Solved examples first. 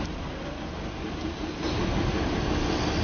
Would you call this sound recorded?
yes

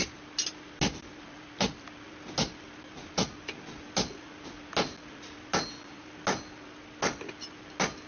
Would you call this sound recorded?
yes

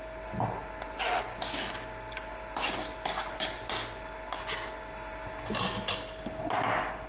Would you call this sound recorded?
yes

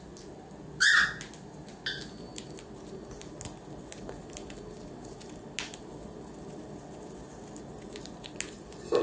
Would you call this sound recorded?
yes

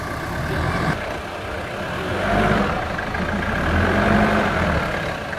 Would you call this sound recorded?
yes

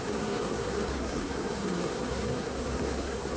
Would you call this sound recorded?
no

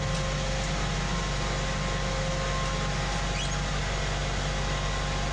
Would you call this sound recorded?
yes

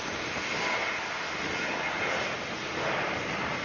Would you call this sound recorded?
yes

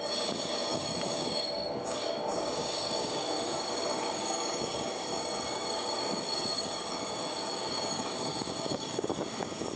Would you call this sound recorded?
no